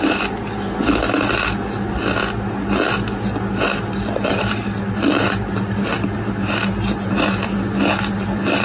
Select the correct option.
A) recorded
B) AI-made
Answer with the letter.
A